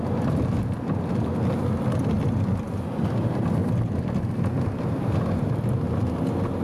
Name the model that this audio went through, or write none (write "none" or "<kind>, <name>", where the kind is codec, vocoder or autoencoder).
none